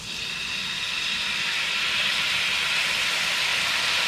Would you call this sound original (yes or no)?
yes